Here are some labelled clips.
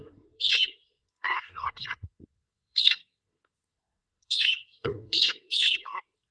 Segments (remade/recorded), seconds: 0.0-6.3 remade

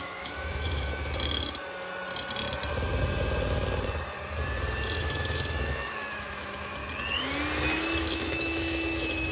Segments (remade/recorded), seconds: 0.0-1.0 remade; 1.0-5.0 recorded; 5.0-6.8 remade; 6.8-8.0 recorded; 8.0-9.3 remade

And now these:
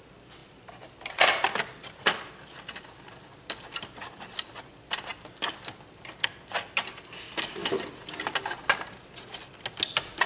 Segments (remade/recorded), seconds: 0.0-0.4 recorded; 0.4-2.6 remade; 2.6-7.6 recorded; 7.6-8.2 remade; 8.2-10.3 recorded

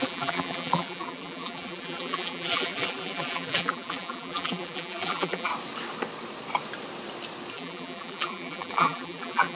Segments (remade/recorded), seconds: 0.0-5.5 remade; 5.5-7.5 recorded; 7.5-9.6 remade